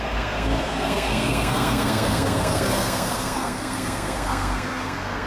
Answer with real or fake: fake